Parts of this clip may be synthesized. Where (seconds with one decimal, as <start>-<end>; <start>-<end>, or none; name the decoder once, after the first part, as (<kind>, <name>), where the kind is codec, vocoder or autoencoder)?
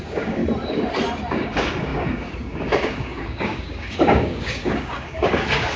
0.0-0.4 (codec, DAC); 1.3-5.8